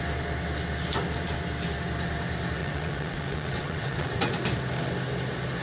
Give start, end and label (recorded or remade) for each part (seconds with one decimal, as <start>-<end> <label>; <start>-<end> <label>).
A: 0.0-2.6 recorded; 2.6-4.3 remade; 4.3-5.6 recorded